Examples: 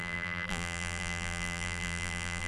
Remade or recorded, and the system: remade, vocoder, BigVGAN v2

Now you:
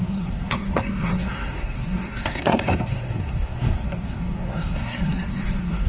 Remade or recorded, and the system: remade, codec, SNAC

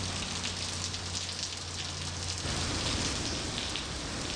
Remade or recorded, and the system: recorded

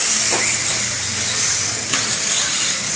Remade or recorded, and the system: recorded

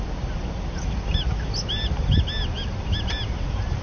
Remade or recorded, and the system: recorded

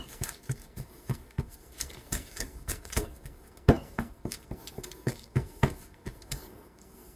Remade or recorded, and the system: remade, codec, SNAC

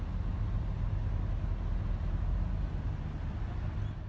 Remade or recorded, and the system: recorded